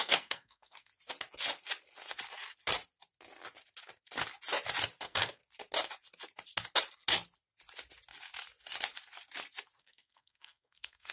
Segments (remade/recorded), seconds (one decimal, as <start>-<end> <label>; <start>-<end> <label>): 0.0-0.9 remade; 0.9-5.0 recorded; 5.0-5.4 remade; 5.4-9.8 recorded; 9.8-11.1 remade